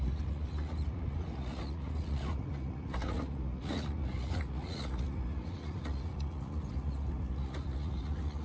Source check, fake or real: fake